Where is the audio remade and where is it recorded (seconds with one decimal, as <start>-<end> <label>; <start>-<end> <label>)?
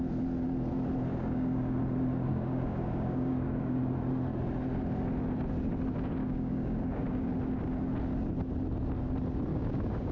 0.0-1.1 recorded; 1.1-1.8 remade; 1.8-2.3 recorded; 2.3-3.8 remade; 3.8-6.2 recorded; 6.2-7.3 remade; 7.3-9.5 recorded; 9.5-10.1 remade